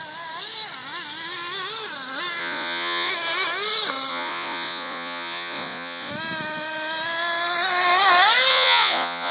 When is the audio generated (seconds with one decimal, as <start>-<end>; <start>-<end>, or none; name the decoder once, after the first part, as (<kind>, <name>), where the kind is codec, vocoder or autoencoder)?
2.4-3.1 (vocoder, Vocos); 4.1-6.1; 8.5-9.3